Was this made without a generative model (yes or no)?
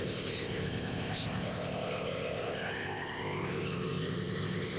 no